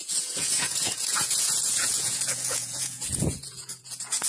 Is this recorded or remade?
remade